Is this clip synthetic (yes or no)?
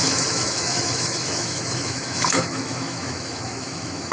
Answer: yes